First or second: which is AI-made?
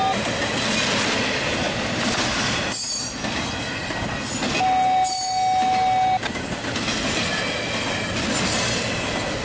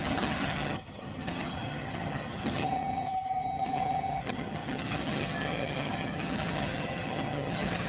second